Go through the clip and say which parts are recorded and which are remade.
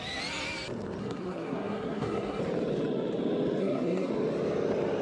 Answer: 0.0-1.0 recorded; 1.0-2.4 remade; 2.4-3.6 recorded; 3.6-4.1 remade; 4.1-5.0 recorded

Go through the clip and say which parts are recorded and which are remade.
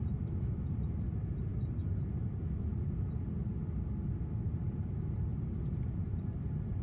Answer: 0.0-1.5 remade; 1.5-4.5 recorded; 4.5-5.3 remade; 5.3-6.0 recorded; 6.0-6.8 remade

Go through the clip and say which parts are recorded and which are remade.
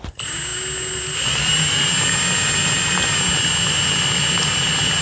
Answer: 0.0-5.0 recorded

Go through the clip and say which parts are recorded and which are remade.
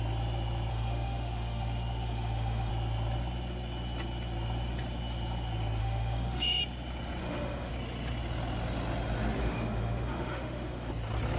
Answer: 0.0-0.7 recorded; 0.7-2.7 remade; 2.7-5.8 recorded; 5.8-6.6 remade; 6.6-7.2 recorded; 7.2-7.7 remade; 7.7-9.4 recorded; 9.4-10.9 remade; 10.9-11.4 recorded